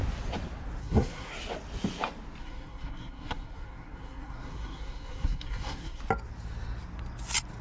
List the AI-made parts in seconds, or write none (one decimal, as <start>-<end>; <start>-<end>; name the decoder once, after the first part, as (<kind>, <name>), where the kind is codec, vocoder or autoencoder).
0.8-1.3 (codec, SNAC); 2.4-6.0